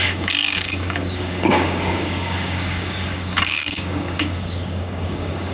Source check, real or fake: fake